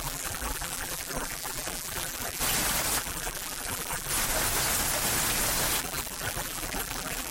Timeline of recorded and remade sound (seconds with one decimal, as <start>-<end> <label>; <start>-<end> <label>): 0.0-2.4 remade; 2.4-3.0 recorded; 3.0-4.1 remade; 4.1-5.8 recorded; 5.8-7.3 remade

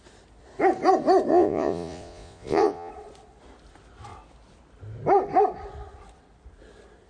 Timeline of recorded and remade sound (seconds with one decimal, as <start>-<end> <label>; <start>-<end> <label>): 0.0-1.3 recorded; 1.3-2.9 remade; 2.9-7.1 recorded